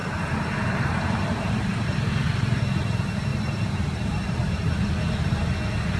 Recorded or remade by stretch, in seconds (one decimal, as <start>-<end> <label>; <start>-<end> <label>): 0.0-2.6 remade; 2.6-3.3 recorded; 3.3-4.9 remade; 4.9-6.0 recorded

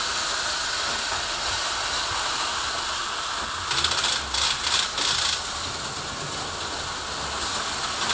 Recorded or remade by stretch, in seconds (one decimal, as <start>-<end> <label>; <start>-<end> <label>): 0.0-8.1 recorded